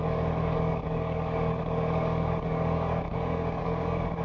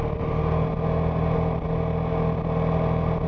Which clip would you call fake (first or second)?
first